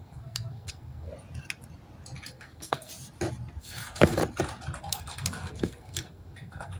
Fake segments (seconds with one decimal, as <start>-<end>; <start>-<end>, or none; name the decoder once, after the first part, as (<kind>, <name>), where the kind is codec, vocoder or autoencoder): 0.0-1.1 (codec, SNAC); 2.3-2.9; 3.6-4.2; 4.8-6.8